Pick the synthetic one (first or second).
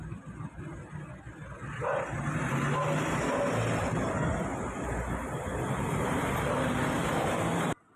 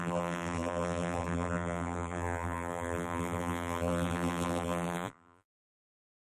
second